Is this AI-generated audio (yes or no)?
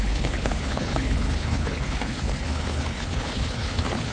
yes